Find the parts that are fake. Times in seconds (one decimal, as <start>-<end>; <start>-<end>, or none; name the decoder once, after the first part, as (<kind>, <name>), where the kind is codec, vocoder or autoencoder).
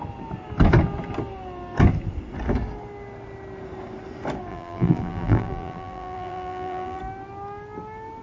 4.5-7.0 (vocoder, BigVGAN v2)